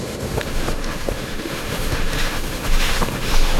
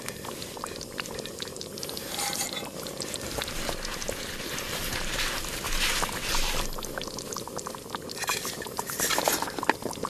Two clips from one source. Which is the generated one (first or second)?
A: first